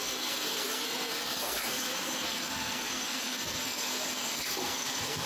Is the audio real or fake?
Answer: fake